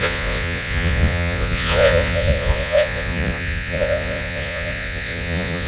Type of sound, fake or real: fake